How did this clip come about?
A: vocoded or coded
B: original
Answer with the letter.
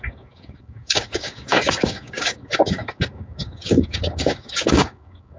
A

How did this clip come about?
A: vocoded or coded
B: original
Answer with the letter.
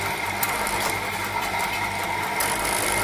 A